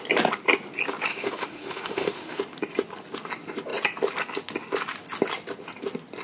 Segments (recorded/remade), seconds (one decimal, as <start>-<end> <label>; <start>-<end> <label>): 0.0-1.1 recorded; 1.1-2.4 remade; 2.4-6.2 recorded

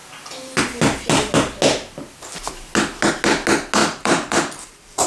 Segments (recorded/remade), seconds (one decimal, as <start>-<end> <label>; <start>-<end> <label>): 0.0-3.8 recorded; 3.8-5.1 remade

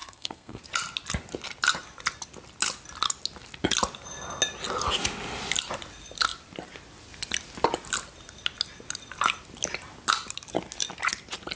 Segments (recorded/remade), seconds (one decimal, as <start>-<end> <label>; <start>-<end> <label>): 0.0-0.6 remade; 0.6-11.6 recorded

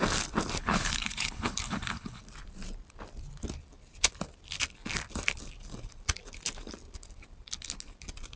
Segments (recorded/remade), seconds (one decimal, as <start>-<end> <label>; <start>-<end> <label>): 0.0-0.6 recorded; 0.6-2.2 remade; 2.2-8.4 recorded

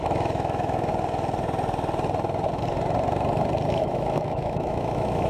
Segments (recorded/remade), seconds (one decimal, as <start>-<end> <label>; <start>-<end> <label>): 0.0-0.9 remade; 0.9-3.7 recorded; 3.7-5.3 remade

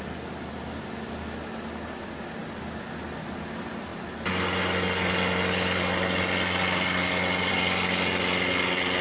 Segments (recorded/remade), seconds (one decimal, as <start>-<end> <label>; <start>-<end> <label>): 0.0-9.0 recorded